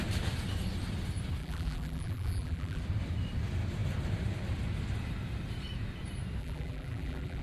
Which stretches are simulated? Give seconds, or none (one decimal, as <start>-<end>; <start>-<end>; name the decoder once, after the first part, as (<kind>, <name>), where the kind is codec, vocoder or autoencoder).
1.4-2.8 (vocoder, BigVGAN v2); 6.4-7.4